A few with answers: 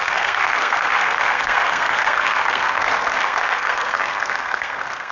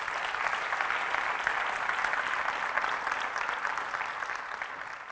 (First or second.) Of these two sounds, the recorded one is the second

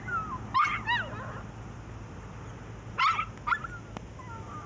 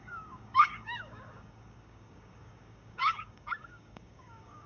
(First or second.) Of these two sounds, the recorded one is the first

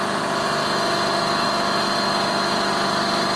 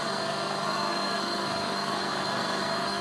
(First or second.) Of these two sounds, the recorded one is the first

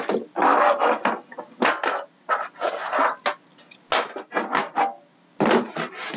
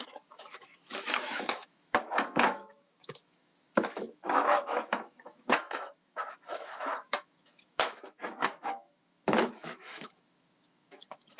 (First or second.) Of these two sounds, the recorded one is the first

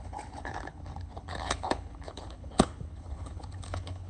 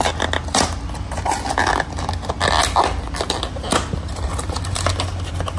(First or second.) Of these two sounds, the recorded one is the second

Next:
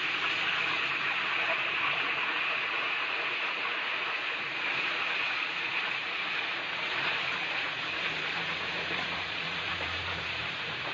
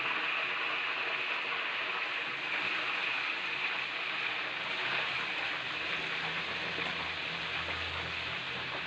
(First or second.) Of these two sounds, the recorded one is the second